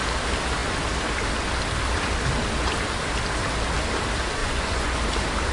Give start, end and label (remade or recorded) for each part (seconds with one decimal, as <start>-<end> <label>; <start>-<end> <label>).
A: 0.0-4.4 recorded; 4.4-5.0 remade; 5.0-5.5 recorded